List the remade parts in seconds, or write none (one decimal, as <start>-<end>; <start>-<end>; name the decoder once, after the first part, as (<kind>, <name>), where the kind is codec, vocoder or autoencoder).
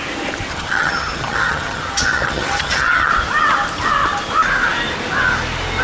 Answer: 0.5-3.1 (vocoder, HiFi-GAN)